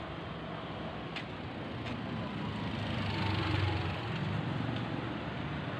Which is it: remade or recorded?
recorded